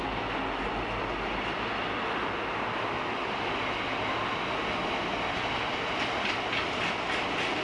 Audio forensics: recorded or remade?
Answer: recorded